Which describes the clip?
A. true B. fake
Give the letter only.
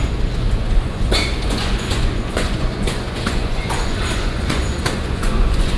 B